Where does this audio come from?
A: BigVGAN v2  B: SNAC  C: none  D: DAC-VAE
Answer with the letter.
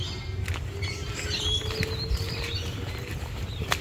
C